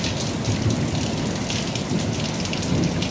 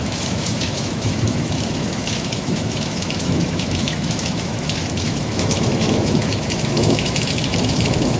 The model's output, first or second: second